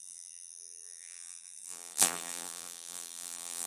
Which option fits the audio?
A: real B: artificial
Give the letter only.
B